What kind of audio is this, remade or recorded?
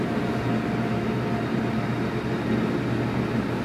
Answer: recorded